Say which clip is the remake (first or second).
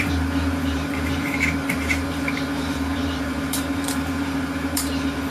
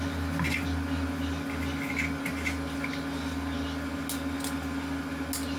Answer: first